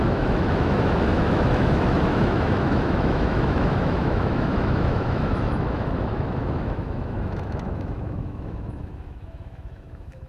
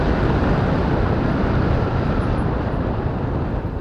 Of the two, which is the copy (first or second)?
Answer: first